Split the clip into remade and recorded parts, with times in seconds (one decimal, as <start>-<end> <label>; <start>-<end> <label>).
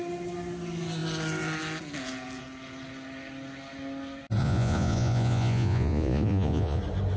0.0-4.4 recorded; 4.4-6.8 remade; 6.8-7.2 recorded